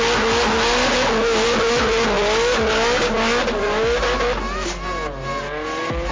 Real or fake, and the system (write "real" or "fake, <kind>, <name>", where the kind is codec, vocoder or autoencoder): real